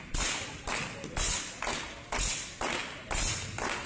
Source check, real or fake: real